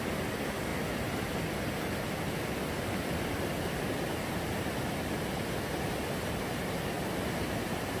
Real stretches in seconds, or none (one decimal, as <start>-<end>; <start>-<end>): 0.0-8.0